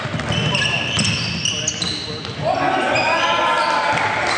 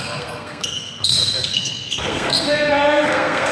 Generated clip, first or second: second